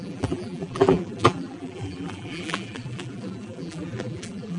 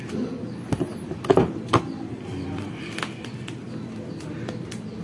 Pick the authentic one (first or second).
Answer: second